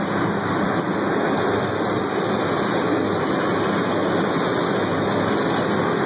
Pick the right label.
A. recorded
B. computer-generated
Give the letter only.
A